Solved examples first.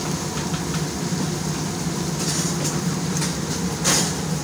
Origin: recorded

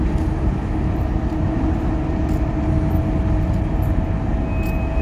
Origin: recorded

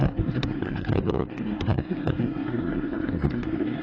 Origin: remade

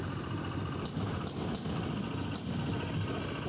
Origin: recorded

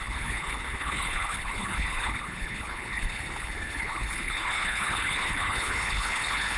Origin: remade